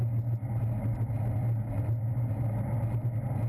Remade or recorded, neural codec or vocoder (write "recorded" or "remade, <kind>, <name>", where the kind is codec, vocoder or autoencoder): recorded